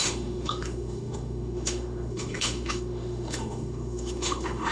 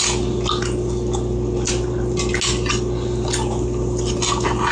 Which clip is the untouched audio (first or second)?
second